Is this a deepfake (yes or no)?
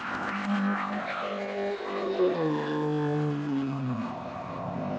yes